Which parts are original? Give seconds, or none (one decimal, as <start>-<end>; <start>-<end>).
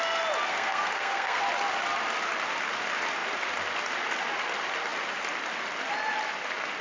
0.0-0.5; 1.4-6.8